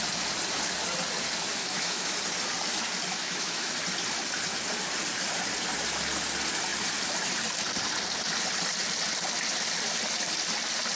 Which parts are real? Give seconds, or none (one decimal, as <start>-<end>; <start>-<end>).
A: 0.0-1.6; 2.2-3.1; 3.7-11.0